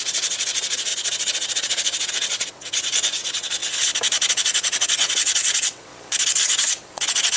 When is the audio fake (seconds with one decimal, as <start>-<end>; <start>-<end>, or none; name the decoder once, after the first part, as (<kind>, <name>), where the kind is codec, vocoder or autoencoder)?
0.0-3.6 (vocoder, WaveNeXt); 4.3-5.9; 6.4-7.4